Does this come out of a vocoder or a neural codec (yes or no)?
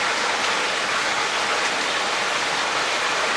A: no